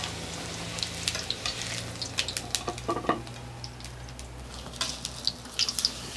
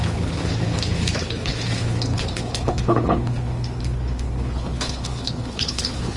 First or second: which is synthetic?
second